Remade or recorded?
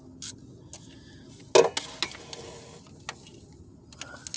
recorded